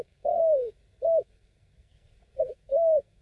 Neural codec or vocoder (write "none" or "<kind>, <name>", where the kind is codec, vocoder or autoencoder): codec, SNAC